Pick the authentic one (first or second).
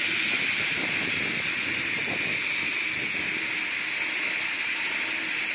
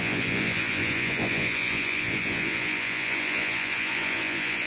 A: first